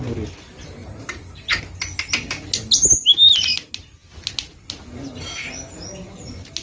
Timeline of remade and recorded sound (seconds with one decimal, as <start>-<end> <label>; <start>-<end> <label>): 0.0-6.6 recorded